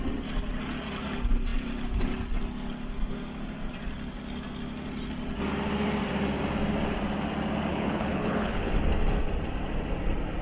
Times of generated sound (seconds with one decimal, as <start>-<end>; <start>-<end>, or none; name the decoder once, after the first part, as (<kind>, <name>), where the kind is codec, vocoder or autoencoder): 7.7-8.7 (codec, HILCodec)